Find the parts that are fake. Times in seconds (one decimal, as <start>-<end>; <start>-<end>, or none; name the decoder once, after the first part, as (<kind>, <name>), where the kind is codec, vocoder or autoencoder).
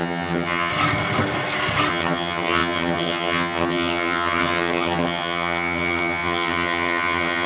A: 0.0-0.7 (vocoder, HiFi-GAN); 1.9-7.5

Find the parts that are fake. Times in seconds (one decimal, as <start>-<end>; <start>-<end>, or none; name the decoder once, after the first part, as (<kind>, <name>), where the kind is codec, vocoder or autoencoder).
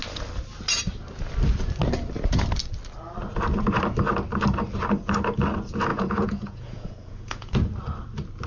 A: 5.9-7.5 (vocoder, Vocos)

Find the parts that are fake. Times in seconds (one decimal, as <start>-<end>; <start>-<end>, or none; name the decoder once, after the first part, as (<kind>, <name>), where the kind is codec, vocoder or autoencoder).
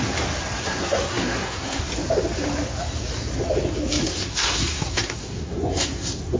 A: 0.7-1.9 (codec, SNAC); 4.0-6.4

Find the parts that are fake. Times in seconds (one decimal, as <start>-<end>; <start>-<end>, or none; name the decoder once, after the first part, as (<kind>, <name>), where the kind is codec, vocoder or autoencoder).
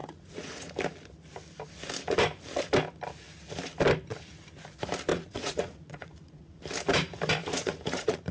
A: 0.0-0.7 (vocoder, Vocos); 5.1-6.6; 7.4-8.3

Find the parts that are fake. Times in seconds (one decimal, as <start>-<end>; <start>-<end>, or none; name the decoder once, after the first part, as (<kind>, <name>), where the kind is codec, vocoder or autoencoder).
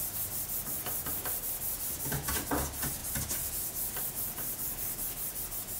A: none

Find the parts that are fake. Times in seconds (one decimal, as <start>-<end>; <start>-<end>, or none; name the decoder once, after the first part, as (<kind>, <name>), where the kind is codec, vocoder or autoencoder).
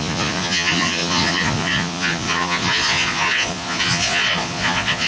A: 0.0-5.1 (vocoder, Vocos)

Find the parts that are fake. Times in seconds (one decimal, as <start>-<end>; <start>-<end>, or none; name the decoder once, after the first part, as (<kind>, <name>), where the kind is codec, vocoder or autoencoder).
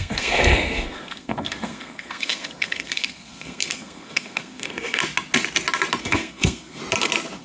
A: 0.0-5.0 (codec, SNAC); 6.0-6.8